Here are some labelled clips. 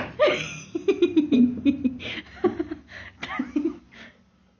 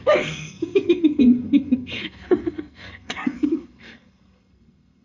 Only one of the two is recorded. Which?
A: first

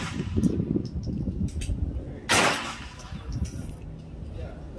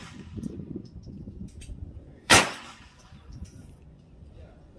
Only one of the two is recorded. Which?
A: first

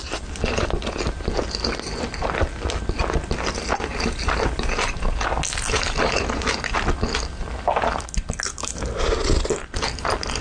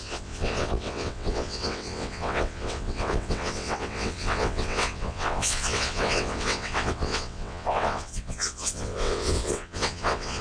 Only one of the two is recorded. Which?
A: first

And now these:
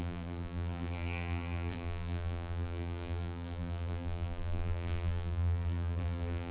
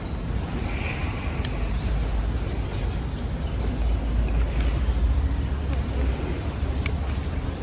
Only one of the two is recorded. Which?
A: second